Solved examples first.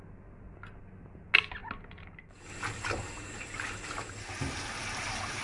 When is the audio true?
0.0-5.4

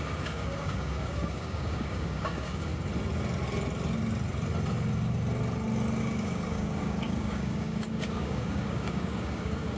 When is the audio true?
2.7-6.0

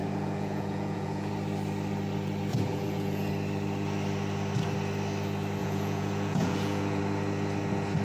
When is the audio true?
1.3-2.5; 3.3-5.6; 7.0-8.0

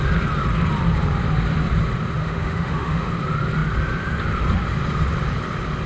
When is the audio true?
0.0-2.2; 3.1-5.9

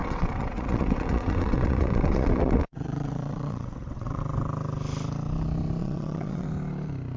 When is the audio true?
4.2-5.8; 6.5-7.2

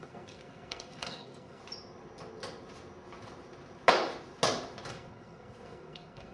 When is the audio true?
1.6-4.9

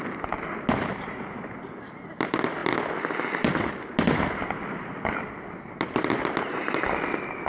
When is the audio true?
0.0-7.5